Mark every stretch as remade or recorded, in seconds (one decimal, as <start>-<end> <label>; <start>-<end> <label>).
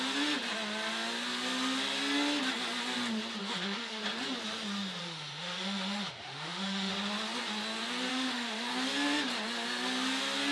0.0-3.4 recorded; 3.4-4.0 remade; 4.0-5.0 recorded; 5.0-6.9 remade; 6.9-8.1 recorded; 8.1-8.7 remade; 8.7-10.5 recorded